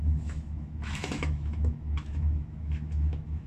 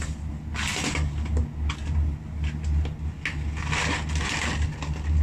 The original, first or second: second